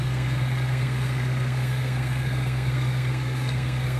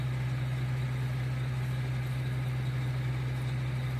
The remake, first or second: first